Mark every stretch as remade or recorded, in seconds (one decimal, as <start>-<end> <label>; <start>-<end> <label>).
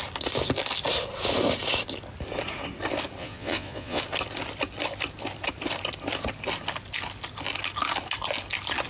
0.0-3.2 recorded; 3.2-4.0 remade; 4.0-8.9 recorded